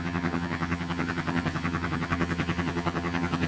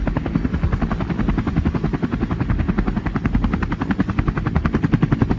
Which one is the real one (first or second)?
second